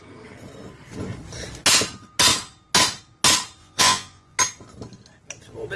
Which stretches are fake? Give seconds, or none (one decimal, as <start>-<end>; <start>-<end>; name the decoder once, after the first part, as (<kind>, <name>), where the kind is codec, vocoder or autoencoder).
3.6-4.4 (vocoder, Vocos)